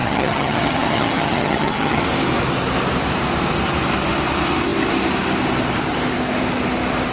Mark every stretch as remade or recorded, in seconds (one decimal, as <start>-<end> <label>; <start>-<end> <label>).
0.0-2.0 remade; 2.0-7.1 recorded